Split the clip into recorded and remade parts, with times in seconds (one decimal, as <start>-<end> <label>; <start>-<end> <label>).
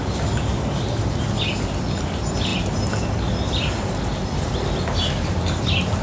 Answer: 0.0-6.0 recorded